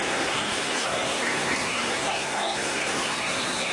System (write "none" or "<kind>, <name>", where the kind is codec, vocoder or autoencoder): codec, SNAC